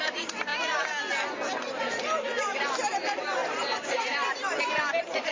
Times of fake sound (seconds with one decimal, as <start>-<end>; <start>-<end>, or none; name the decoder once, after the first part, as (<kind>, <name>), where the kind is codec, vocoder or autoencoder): 0.0-0.5 (vocoder, BigVGAN v2); 1.7-5.3